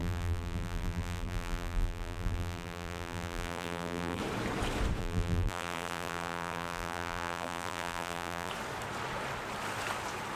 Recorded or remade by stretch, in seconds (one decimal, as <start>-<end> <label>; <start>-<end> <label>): 0.0-4.2 remade; 4.2-5.0 recorded; 5.0-8.5 remade; 8.5-10.4 recorded